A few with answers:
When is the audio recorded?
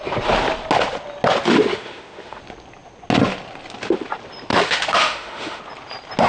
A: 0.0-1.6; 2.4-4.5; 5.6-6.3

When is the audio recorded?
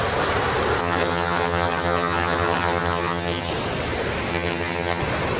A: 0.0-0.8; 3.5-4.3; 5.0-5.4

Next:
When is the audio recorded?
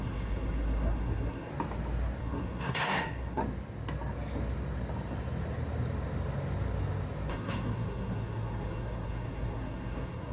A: 1.5-2.2; 3.4-7.3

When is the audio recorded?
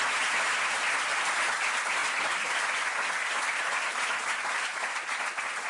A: 0.0-5.7